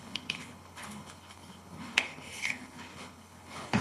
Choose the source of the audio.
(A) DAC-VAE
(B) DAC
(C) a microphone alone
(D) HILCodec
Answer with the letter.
D